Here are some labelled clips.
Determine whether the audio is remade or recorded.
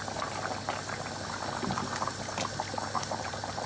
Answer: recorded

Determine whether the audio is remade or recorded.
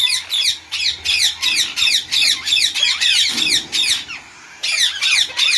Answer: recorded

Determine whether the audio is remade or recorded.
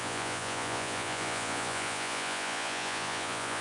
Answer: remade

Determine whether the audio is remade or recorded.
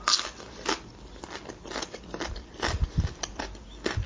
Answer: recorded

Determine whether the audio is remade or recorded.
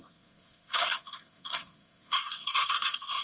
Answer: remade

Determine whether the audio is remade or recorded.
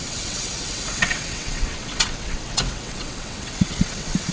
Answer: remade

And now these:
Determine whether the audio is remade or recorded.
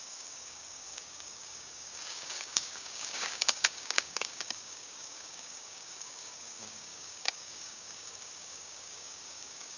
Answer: remade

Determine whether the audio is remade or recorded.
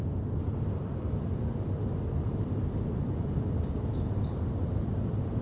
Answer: recorded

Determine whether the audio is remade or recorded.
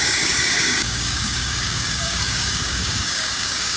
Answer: remade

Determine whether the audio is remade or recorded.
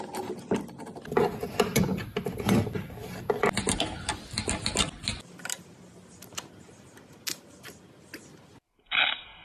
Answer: recorded